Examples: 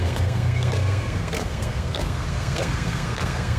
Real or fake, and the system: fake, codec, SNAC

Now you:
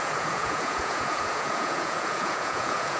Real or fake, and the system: fake, vocoder, Vocos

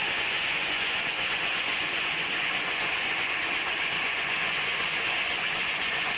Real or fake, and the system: fake, vocoder, Vocos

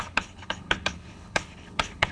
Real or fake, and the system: fake, codec, HILCodec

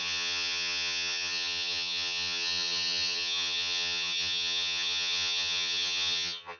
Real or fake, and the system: fake, vocoder, HiFi-GAN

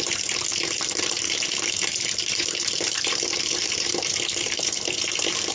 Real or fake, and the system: fake, vocoder, BigVGAN v2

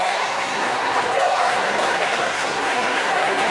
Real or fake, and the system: fake, codec, SNAC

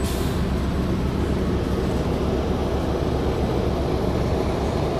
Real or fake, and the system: real